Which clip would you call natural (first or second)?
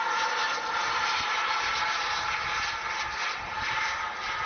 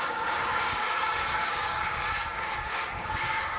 first